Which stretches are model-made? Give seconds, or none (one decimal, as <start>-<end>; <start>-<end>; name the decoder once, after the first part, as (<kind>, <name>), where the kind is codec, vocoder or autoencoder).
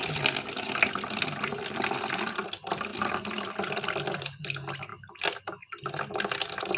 none